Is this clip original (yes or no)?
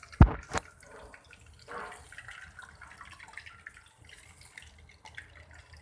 yes